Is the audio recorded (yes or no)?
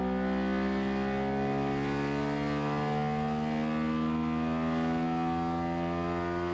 yes